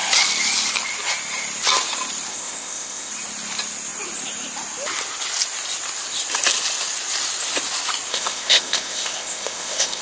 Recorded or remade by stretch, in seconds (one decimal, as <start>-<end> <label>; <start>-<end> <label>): 0.0-2.3 recorded; 2.3-3.1 remade; 3.1-8.1 recorded; 8.1-10.0 remade